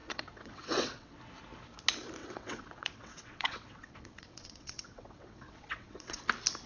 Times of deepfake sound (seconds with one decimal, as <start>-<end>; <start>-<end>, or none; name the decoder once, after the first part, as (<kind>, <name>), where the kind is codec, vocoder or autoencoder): 0.0-1.2 (vocoder, WaveNeXt); 2.2-6.2